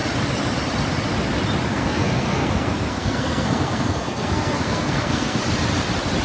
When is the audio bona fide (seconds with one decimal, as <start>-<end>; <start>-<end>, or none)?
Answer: 0.0-1.7; 5.4-6.2